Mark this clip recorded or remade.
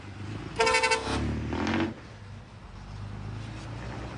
recorded